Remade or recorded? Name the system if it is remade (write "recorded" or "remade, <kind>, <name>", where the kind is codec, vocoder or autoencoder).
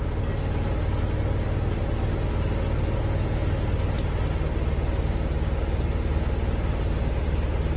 recorded